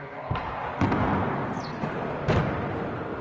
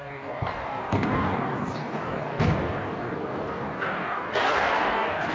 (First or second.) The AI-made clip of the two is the second